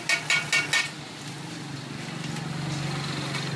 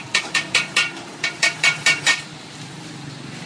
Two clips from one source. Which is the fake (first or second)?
second